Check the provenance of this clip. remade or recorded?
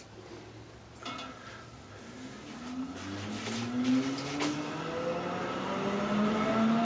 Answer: recorded